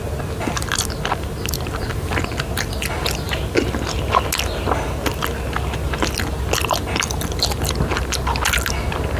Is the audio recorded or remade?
recorded